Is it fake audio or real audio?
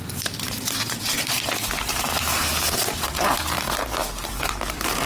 fake